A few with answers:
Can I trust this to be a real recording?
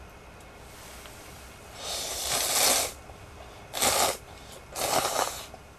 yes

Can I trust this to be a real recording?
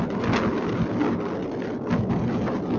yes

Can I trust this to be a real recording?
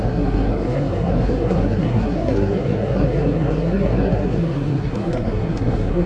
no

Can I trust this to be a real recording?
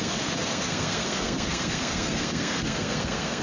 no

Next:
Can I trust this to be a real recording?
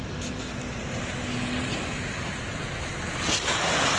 yes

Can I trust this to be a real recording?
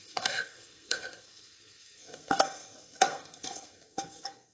no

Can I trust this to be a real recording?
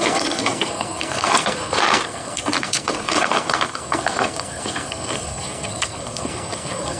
no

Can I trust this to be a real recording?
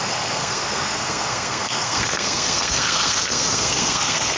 no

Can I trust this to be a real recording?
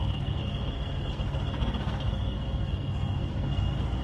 no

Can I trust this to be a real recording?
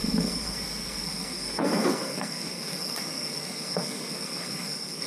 no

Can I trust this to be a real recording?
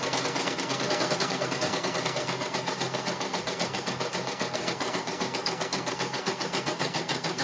no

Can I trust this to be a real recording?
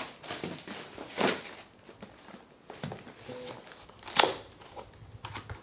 yes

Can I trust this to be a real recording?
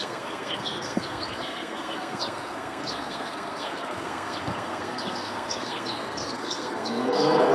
no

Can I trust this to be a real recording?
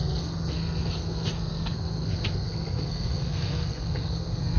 no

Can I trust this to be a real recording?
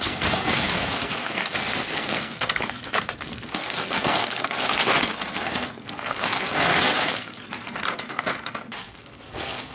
no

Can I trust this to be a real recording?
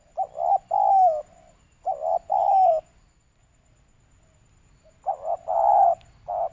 yes